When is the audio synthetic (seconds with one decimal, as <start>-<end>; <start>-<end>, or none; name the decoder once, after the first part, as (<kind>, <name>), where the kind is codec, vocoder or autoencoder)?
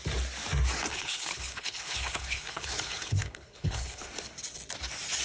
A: 0.9-4.0 (codec, HILCodec)